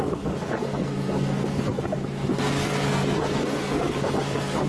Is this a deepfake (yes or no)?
yes